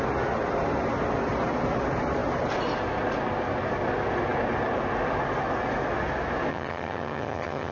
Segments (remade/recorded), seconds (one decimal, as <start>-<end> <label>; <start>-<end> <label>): 0.0-6.5 recorded; 6.5-7.7 remade